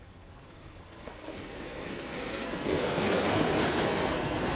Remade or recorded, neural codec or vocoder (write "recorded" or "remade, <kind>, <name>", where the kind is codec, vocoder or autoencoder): remade, codec, SNAC